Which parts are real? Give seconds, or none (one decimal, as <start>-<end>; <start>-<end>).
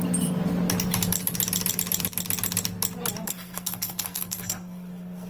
0.0-3.2